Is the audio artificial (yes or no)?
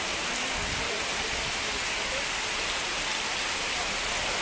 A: no